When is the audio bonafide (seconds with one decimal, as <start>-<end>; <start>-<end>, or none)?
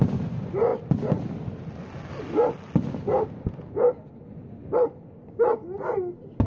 0.0-6.5